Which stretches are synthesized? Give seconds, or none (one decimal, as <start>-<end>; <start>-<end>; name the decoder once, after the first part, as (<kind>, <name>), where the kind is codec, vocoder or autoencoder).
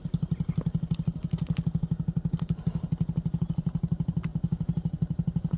3.4-5.6 (vocoder, BigVGAN v2)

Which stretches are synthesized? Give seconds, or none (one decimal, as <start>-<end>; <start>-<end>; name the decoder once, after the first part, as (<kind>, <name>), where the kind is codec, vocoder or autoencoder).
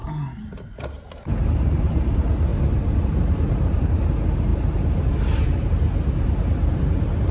1.1-7.3 (vocoder, BigVGAN v2)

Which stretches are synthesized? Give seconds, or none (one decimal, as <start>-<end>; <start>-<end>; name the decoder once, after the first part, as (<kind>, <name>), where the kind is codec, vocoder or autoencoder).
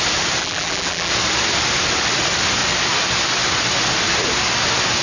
0.4-1.1 (vocoder, BigVGAN v2)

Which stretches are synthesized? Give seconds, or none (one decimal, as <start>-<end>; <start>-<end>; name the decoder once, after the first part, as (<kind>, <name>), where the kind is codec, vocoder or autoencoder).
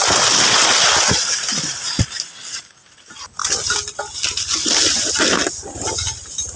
none